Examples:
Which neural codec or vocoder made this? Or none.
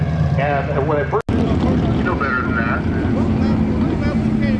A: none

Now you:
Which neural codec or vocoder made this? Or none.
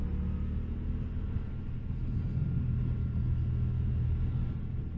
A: none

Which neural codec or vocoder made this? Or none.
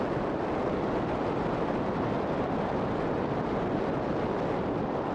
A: none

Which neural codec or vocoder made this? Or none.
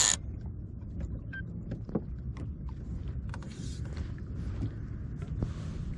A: none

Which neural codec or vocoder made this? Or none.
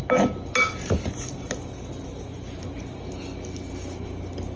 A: none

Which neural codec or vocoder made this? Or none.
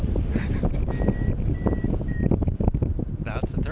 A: none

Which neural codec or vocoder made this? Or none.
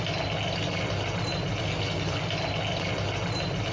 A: none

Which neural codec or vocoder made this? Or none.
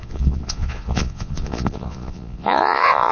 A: vocoder, Vocos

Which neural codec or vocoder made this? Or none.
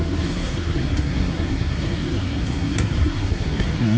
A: codec, SNAC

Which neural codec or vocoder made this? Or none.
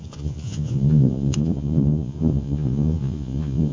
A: vocoder, Vocos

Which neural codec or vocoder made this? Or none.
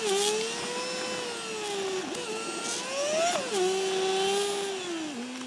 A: none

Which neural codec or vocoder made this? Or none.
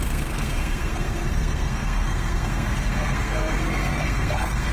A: codec, SNAC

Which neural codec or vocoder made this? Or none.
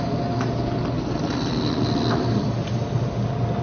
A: none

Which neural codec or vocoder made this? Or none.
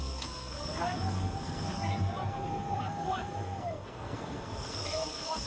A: codec, SNAC